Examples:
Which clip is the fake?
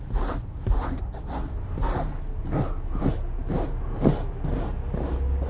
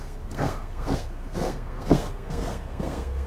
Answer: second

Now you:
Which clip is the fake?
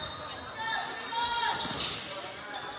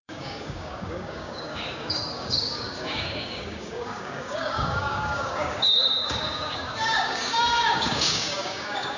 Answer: second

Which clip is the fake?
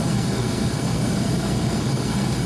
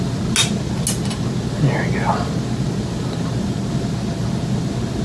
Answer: first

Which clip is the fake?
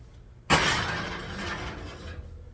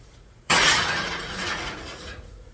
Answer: second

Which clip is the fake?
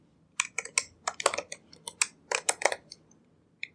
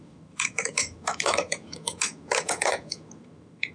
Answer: second